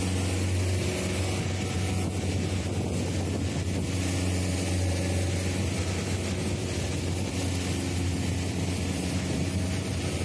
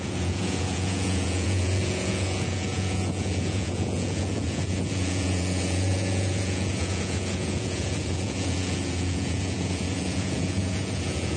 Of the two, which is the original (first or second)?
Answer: first